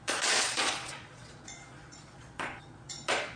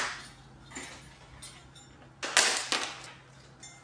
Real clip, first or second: second